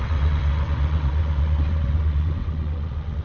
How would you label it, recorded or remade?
remade